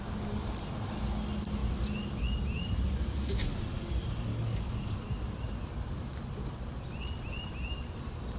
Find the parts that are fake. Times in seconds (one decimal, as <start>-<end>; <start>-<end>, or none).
4.3-5.0